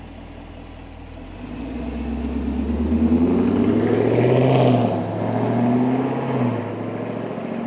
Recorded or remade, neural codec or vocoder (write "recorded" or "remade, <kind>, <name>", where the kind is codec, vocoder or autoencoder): recorded